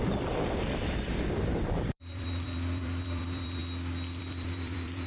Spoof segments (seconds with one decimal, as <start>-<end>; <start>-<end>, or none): 0.0-3.6; 4.2-5.1